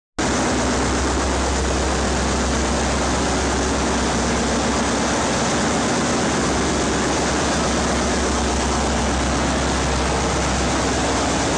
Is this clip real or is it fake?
real